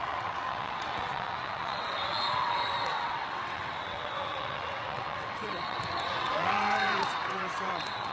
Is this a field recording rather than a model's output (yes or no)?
no